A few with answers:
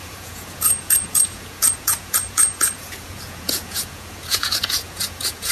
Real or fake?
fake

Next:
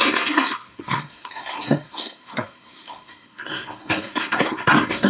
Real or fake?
fake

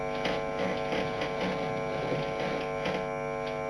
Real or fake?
real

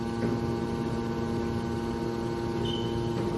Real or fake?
real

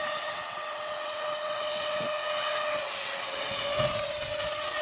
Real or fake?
fake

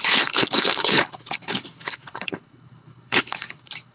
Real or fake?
fake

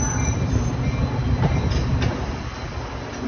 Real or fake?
real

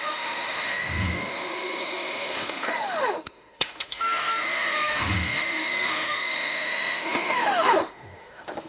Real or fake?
fake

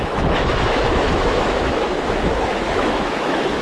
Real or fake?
fake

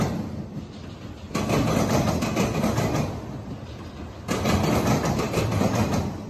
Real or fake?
real